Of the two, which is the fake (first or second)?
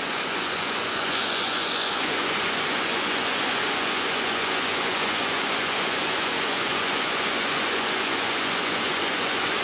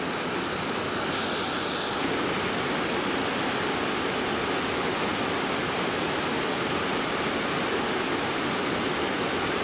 first